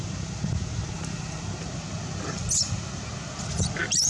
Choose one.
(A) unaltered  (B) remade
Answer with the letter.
A